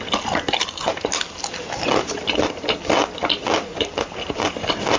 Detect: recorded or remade recorded